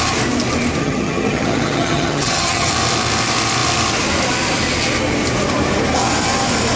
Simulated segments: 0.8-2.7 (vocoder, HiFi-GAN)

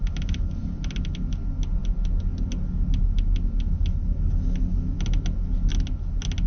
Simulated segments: none

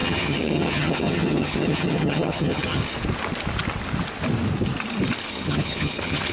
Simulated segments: 0.0-2.8 (vocoder, HiFi-GAN); 5.3-6.3

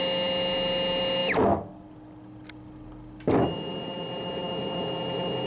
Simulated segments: none

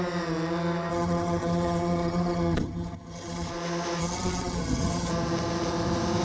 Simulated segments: 0.9-3.5 (vocoder, HiFi-GAN); 4.0-5.1

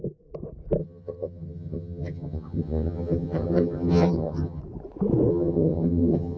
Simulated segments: 0.8-4.6 (vocoder, HiFi-GAN); 5.3-6.4

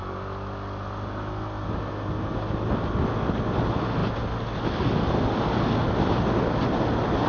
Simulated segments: none